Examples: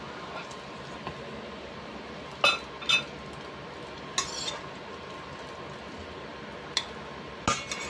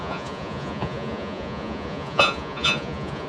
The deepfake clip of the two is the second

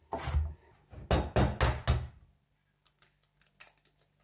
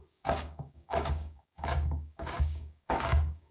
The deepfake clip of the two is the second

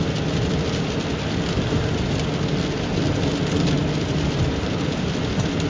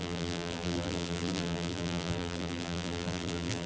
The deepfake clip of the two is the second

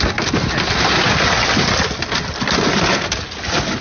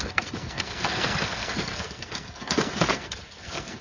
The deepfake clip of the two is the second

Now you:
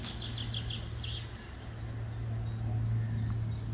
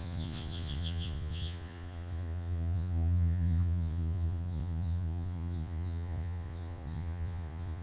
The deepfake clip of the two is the second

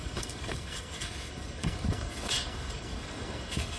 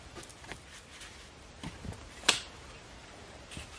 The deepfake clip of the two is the first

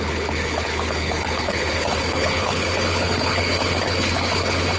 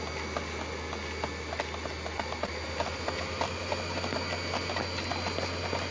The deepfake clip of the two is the first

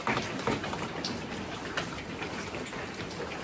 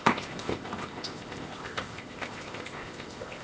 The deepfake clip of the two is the second